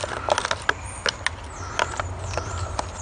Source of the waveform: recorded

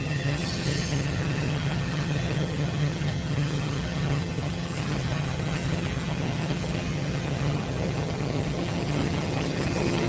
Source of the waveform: remade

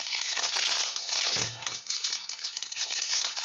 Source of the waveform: remade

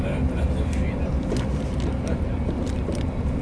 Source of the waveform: recorded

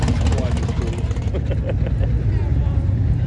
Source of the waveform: recorded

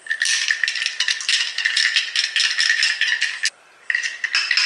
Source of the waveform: recorded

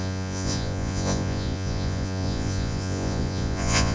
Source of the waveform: remade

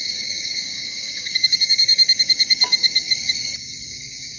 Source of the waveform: remade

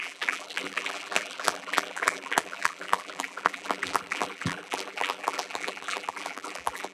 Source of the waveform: remade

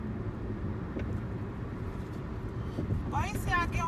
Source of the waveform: remade